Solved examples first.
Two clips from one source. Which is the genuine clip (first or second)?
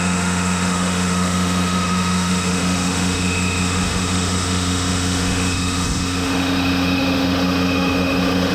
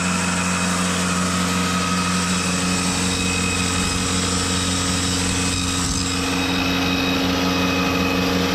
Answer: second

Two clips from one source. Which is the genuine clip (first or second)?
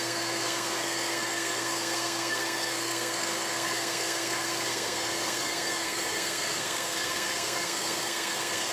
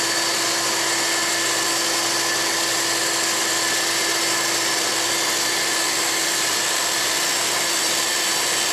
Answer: second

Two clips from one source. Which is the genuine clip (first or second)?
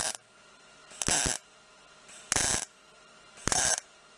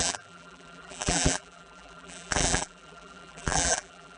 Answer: first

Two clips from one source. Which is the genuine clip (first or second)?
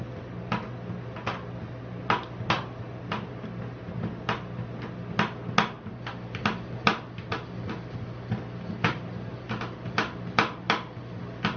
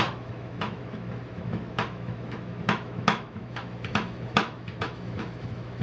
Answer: first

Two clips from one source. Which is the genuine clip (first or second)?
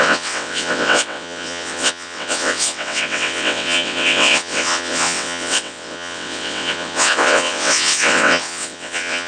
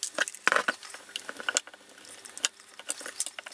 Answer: second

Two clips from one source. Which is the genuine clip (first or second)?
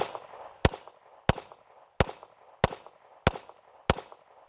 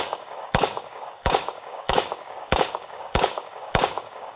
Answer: first